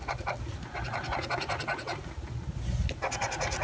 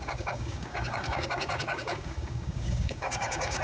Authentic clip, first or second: first